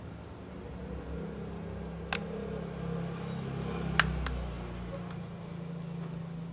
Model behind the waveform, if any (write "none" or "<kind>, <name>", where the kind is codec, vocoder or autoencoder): none